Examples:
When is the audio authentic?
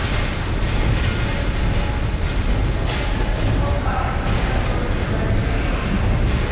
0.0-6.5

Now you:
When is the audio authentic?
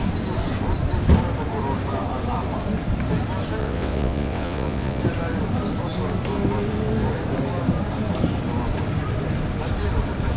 0.0-3.6; 5.0-10.4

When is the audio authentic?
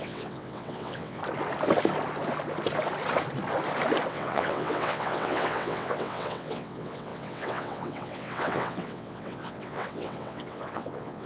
1.2-4.1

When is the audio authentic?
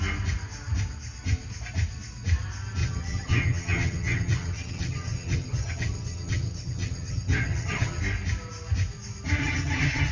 0.0-2.8; 8.0-9.4